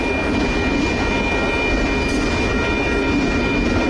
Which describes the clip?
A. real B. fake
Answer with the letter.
A